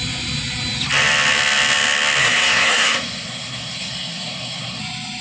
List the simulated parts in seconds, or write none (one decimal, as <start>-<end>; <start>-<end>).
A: 2.2-4.8